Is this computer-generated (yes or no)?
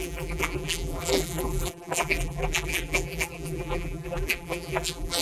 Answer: yes